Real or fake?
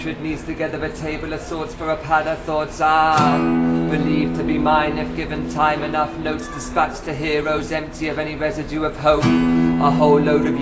real